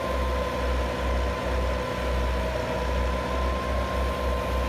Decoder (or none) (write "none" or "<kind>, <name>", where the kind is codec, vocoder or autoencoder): none